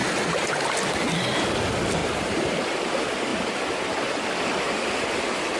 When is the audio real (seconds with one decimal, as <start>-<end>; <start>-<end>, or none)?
0.5-2.0; 2.6-5.6